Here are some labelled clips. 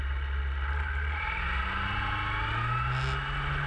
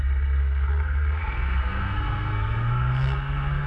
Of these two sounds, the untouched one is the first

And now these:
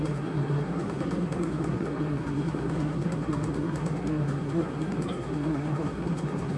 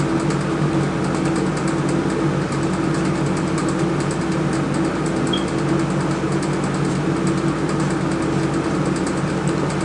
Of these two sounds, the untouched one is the second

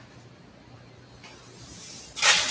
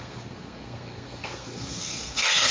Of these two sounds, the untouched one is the first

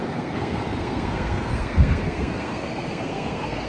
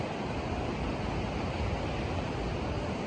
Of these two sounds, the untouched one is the second